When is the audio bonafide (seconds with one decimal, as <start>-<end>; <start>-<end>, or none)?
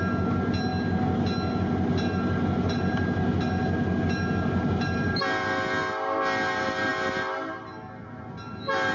0.0-8.9